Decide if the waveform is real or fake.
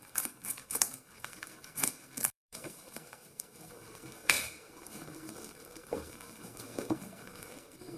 fake